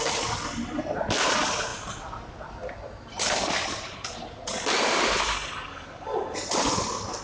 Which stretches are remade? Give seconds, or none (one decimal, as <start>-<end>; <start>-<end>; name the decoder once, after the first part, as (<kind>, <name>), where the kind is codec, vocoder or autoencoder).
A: none